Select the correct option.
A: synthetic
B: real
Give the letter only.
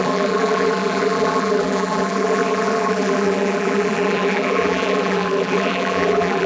A